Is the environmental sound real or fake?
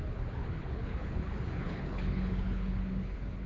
fake